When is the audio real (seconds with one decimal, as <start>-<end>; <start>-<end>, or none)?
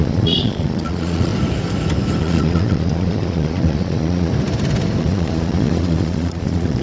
1.3-2.2; 4.3-5.0